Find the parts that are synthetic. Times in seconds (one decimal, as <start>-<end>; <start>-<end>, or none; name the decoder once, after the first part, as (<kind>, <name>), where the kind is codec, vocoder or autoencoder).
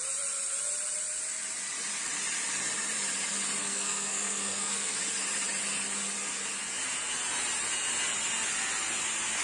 3.6-5.0 (codec, SNAC)